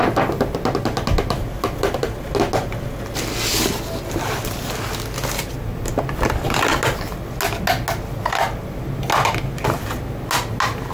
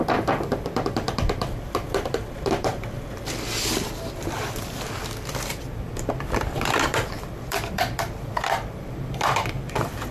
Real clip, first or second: first